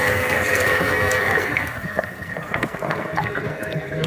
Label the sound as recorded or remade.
remade